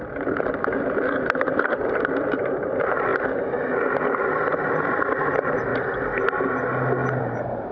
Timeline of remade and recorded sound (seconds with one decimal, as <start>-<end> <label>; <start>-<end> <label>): 0.0-3.1 remade; 3.1-5.1 recorded; 5.1-5.7 remade; 5.7-7.2 recorded; 7.2-7.7 remade